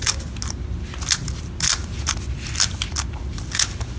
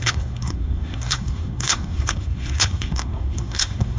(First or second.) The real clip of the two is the first